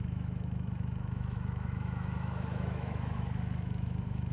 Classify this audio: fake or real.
fake